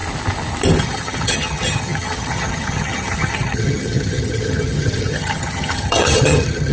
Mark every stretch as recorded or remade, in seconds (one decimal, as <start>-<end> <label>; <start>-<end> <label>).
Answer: 0.0-0.8 recorded; 0.8-6.7 remade